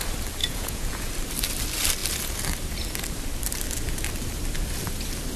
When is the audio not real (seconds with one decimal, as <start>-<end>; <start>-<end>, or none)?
0.4-1.1